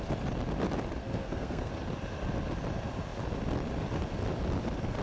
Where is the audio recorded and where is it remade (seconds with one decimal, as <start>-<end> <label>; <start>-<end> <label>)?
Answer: 0.0-1.0 recorded; 1.0-1.7 remade; 1.7-5.0 recorded